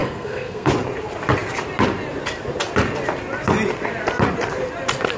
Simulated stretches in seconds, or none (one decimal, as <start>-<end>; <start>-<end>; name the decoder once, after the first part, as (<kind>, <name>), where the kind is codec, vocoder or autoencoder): 0.0-0.7 (codec, SNAC)